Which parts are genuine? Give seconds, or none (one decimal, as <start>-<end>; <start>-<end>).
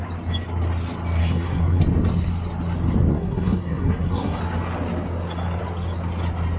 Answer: 0.0-1.2; 1.8-3.1; 4.4-6.6